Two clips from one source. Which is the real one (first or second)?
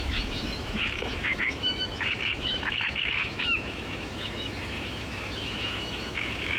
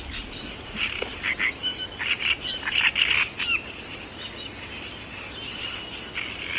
second